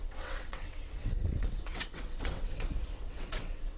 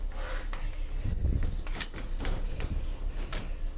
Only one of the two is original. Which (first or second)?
second